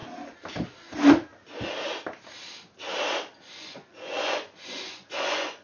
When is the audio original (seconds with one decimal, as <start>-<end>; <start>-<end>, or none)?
0.0-3.4